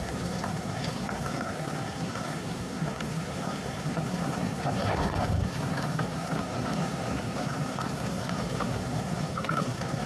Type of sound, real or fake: fake